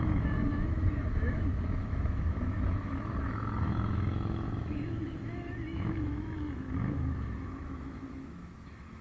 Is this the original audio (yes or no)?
no